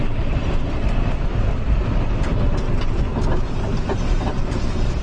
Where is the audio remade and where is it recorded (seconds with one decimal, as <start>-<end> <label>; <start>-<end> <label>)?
0.0-3.1 remade; 3.1-3.6 recorded; 3.6-5.0 remade